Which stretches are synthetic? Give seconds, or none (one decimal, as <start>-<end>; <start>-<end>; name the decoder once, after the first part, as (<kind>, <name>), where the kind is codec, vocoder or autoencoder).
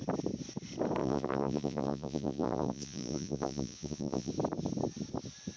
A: 1.0-4.3 (vocoder, Vocos)